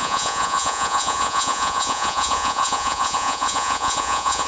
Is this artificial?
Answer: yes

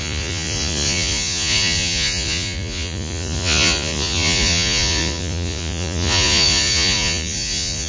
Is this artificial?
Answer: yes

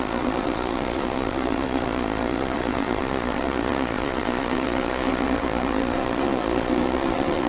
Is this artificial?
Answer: yes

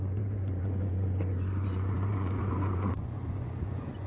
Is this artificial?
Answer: yes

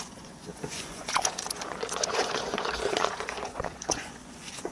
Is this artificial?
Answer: yes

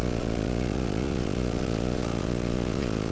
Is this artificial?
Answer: yes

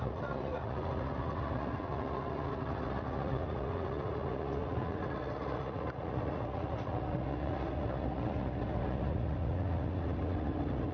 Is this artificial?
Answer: yes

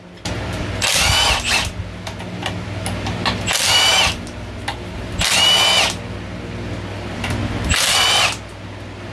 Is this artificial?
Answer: no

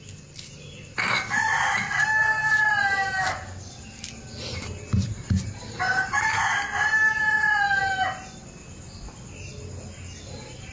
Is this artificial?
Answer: no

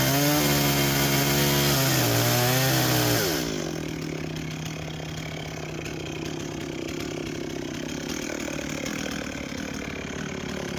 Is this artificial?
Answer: no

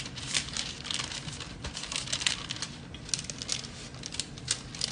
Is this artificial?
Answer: no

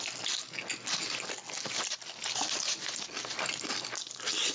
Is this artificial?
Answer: no